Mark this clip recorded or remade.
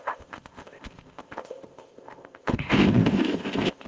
remade